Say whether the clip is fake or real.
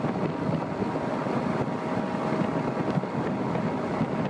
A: real